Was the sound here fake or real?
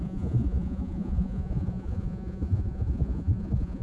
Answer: fake